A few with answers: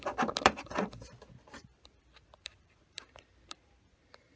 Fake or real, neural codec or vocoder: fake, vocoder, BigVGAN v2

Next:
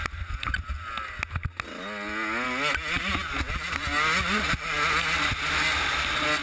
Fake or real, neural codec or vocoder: real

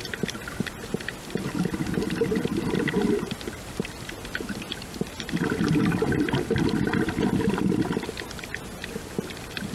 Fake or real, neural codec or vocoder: real